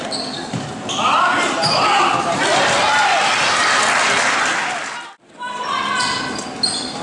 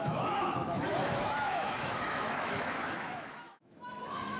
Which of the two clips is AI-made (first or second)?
second